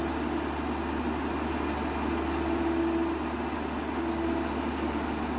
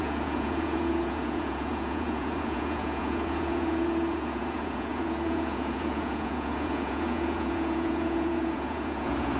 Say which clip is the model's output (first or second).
second